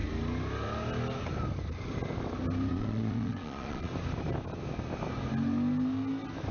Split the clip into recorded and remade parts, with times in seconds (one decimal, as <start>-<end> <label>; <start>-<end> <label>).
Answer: 0.0-2.7 recorded; 2.7-3.9 remade; 3.9-6.5 recorded